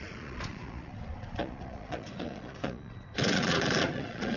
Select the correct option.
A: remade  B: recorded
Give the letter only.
A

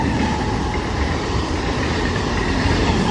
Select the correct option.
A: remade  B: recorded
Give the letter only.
A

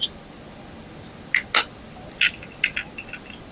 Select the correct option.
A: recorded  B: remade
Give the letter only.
A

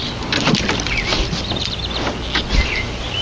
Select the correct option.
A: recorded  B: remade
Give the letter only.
A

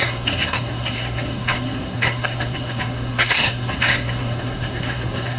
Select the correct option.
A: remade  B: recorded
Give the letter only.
A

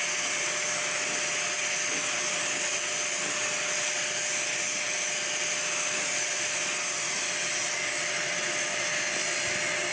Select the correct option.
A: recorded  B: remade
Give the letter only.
A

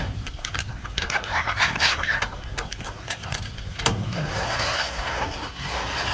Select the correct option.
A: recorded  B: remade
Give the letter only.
B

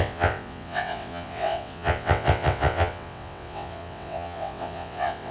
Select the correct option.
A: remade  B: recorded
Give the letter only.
A